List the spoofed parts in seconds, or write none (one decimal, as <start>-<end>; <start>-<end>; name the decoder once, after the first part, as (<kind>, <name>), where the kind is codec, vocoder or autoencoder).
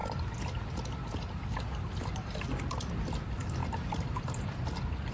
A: 3.6-5.1 (vocoder, BigVGAN v2)